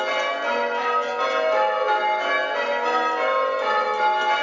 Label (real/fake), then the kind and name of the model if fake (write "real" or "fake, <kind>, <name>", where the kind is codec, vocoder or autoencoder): real